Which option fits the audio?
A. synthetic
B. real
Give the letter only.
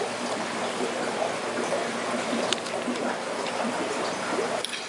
A